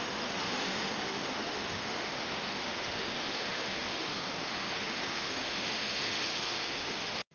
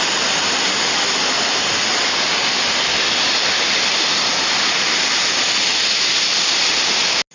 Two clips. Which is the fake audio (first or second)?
first